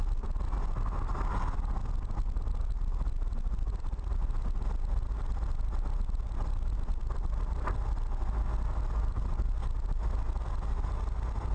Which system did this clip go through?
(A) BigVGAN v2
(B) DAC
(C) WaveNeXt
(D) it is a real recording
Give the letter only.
D